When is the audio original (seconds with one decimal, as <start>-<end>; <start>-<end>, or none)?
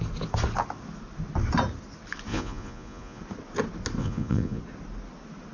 0.0-2.3; 3.2-4.0; 4.6-5.5